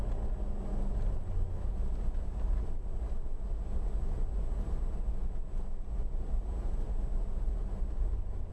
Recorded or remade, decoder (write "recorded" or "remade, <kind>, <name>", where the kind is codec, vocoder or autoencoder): recorded